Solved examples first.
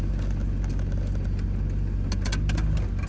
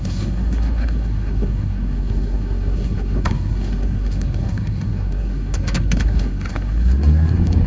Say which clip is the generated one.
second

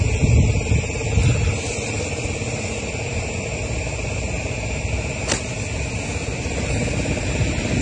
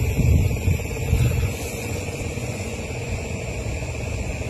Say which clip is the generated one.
second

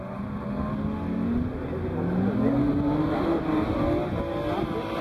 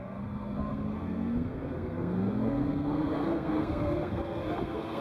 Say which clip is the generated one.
second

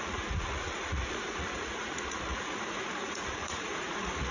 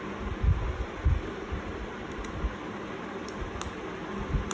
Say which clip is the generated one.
first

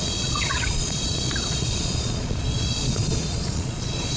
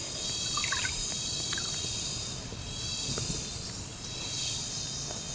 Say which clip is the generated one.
first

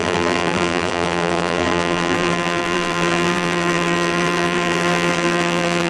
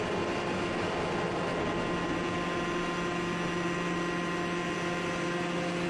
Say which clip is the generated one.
first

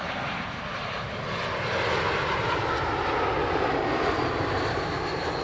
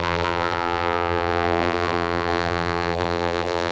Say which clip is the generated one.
second